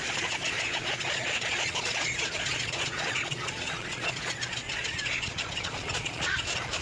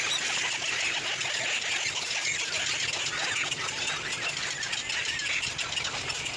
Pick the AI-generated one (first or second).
first